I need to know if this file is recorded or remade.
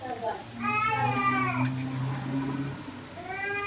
recorded